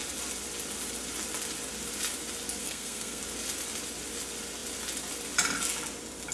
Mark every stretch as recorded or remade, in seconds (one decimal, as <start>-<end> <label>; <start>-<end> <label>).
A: 0.0-2.6 recorded; 2.6-3.2 remade; 3.2-6.3 recorded